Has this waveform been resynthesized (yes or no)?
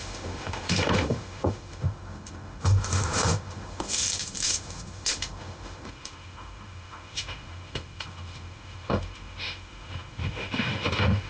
yes